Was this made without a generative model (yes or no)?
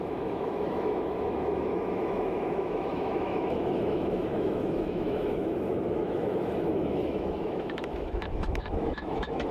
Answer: no